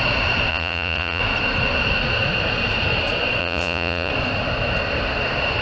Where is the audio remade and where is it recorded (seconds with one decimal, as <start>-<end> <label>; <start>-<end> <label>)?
0.0-0.5 recorded; 0.5-1.2 remade; 1.2-3.4 recorded; 3.4-4.1 remade; 4.1-5.6 recorded